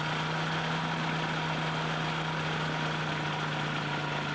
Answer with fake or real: real